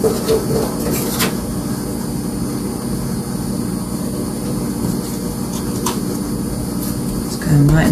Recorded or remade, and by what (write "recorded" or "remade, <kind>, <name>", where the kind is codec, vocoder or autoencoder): recorded